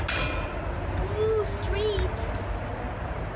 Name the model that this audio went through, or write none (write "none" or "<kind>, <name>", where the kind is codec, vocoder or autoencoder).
none